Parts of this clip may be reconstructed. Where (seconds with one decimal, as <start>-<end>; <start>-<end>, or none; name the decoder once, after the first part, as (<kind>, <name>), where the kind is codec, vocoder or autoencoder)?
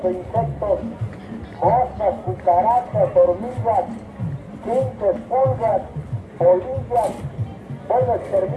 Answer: 5.7-6.3 (vocoder, Vocos)